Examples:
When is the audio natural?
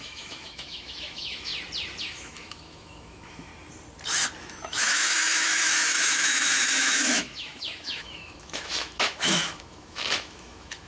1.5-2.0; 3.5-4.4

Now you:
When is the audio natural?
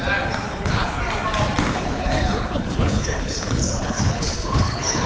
0.0-0.4; 1.0-1.7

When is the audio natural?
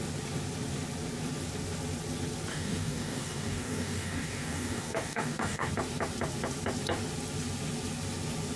0.0-2.5; 5.7-8.6